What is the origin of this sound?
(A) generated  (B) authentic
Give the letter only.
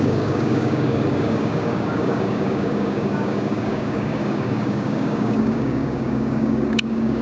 A